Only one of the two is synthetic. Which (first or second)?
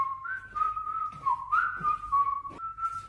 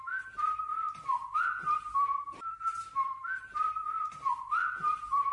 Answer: second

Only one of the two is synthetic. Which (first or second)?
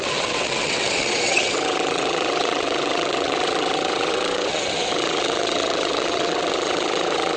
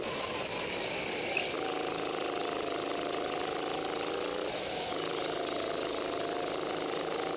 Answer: first